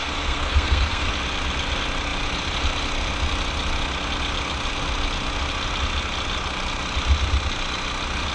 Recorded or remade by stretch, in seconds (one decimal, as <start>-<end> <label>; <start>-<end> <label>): 0.0-1.1 remade; 1.1-8.3 recorded